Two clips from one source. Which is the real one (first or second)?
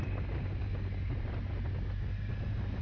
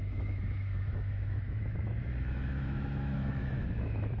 first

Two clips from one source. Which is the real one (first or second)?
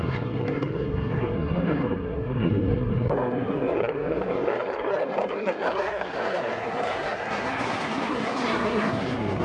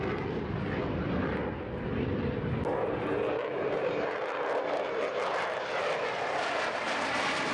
second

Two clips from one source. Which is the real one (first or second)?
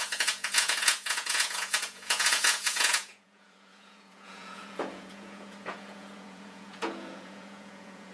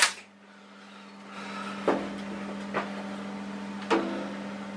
second